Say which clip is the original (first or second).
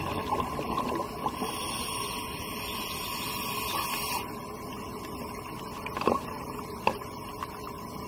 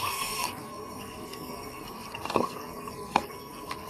first